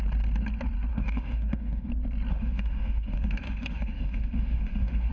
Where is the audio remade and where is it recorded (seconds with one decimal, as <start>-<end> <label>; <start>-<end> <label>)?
0.0-0.9 recorded; 0.9-1.9 remade; 1.9-2.3 recorded; 2.3-5.1 remade